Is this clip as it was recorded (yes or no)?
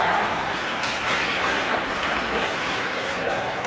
no